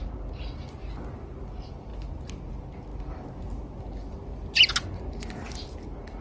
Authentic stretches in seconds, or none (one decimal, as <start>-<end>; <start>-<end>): 0.0-6.2